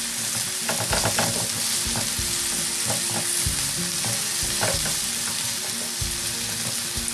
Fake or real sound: real